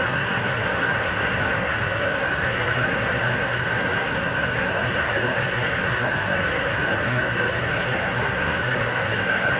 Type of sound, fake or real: fake